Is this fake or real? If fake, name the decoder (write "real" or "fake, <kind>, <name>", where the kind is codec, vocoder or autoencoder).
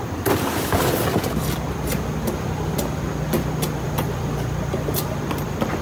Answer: real